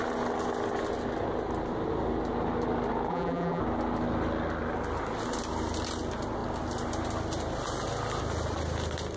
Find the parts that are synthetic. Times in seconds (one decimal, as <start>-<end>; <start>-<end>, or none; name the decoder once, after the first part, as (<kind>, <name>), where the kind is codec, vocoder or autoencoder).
3.1-3.6 (vocoder, BigVGAN v2)